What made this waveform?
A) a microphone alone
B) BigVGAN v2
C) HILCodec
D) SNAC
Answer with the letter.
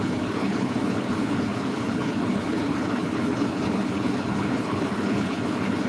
C